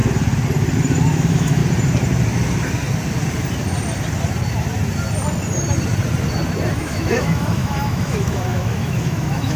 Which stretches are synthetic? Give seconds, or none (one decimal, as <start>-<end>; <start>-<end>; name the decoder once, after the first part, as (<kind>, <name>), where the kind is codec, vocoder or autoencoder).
1.1-1.6 (autoencoder, DAC-VAE); 6.8-9.6